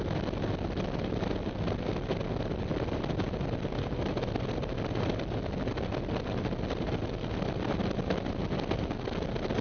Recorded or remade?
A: recorded